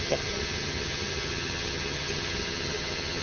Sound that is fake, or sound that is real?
fake